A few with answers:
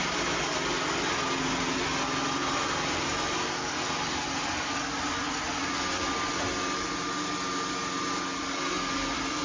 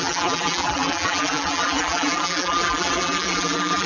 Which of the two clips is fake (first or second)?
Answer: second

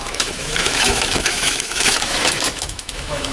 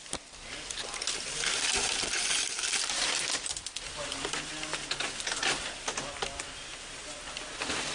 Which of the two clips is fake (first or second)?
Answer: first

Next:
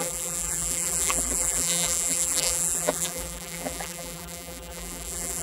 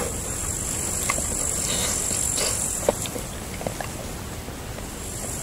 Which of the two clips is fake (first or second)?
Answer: first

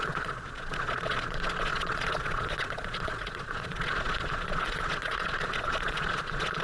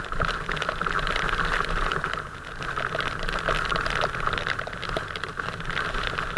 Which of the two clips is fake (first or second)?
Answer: first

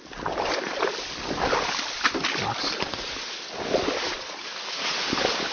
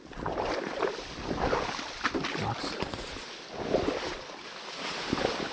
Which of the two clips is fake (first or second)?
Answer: second